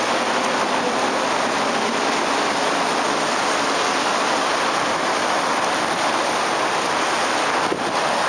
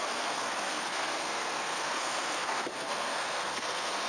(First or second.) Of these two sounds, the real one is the first